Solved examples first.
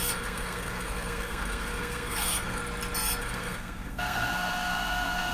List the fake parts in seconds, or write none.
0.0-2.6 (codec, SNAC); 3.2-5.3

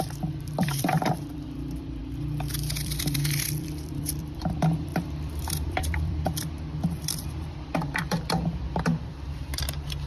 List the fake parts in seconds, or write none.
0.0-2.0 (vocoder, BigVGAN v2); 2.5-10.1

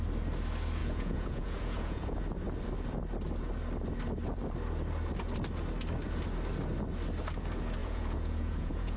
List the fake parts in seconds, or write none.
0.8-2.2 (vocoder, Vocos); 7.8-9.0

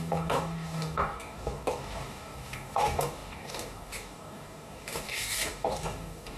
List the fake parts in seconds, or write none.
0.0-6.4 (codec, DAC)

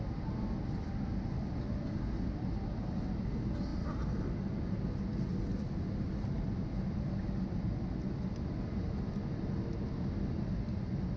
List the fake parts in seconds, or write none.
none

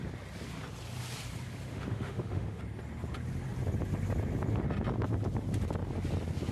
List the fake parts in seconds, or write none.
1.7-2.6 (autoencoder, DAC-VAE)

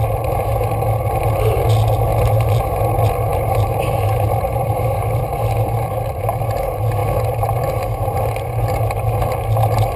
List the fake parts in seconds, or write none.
2.1-2.8 (vocoder, BigVGAN v2); 3.3-5.2

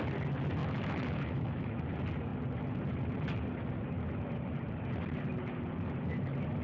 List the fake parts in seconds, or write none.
0.6-1.8 (autoencoder, DAC-VAE)